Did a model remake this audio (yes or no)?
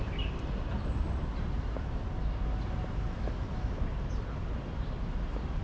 no